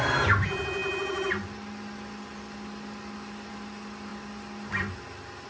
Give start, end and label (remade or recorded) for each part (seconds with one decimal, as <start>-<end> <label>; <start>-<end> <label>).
0.0-5.5 recorded